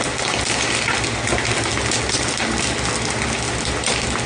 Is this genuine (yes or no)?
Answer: yes